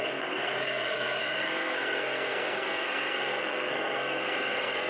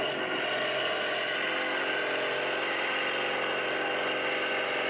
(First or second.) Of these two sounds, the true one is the second